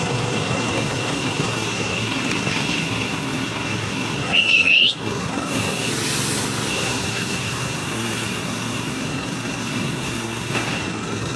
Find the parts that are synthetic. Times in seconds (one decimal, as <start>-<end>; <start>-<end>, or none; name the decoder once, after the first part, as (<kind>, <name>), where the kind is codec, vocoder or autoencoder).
0.0-5.9 (codec, SNAC); 6.7-11.4